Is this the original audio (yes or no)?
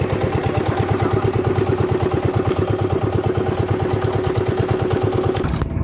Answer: yes